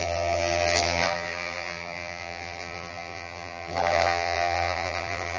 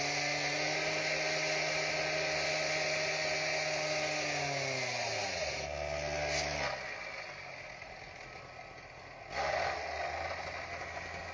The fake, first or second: first